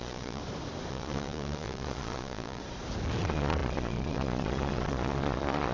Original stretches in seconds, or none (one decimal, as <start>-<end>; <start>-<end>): 0.4-0.9; 2.6-3.2